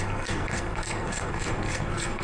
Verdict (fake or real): fake